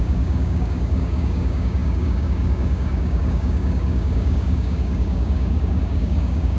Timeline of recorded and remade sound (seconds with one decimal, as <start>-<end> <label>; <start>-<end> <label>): 0.0-6.6 remade